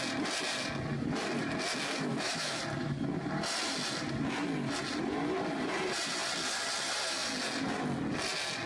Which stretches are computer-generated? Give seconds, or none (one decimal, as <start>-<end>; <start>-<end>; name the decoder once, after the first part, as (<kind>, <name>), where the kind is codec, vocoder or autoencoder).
2.1-2.6 (autoencoder, DAC-VAE)